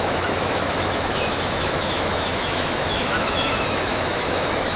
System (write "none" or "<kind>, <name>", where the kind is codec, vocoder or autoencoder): autoencoder, DAC-VAE